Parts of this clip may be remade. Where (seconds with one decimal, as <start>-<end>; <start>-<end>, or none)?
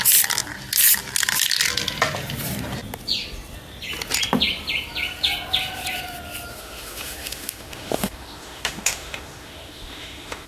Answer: 6.5-10.5